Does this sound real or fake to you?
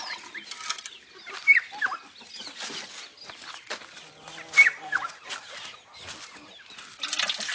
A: real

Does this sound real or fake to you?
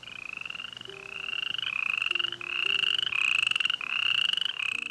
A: real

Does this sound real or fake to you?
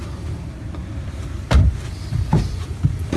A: fake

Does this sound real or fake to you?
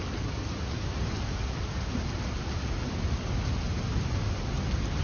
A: real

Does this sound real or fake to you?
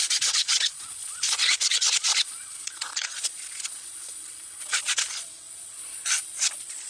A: fake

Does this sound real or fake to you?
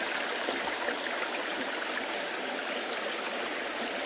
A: real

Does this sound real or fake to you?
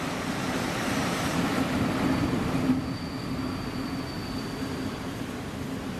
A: real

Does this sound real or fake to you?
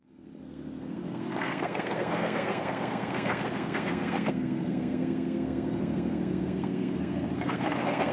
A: fake